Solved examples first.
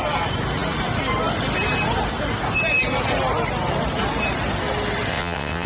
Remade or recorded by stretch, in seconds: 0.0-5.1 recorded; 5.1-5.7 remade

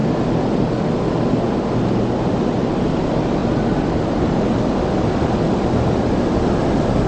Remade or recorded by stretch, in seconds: 0.0-3.4 recorded; 3.4-4.6 remade; 4.6-7.1 recorded

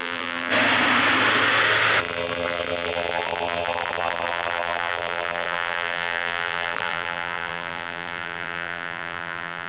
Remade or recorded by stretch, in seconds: 0.0-0.5 remade; 0.5-2.0 recorded; 2.0-9.7 remade

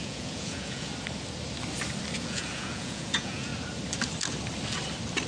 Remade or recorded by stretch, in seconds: 0.0-0.9 remade; 0.9-2.2 recorded; 2.2-3.5 remade; 3.5-5.3 recorded

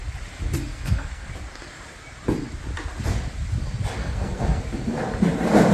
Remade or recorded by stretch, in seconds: 0.0-0.7 recorded; 0.7-1.3 remade; 1.3-4.0 recorded; 4.0-4.6 remade; 4.6-5.7 recorded

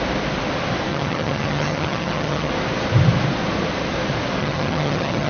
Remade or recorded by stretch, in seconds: 0.0-0.9 recorded; 0.9-2.5 remade; 2.5-4.4 recorded; 4.4-5.3 remade

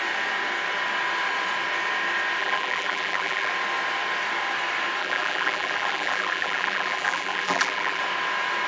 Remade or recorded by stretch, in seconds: 0.0-2.4 recorded; 2.4-3.5 remade; 3.5-5.0 recorded; 5.0-8.0 remade; 8.0-8.7 recorded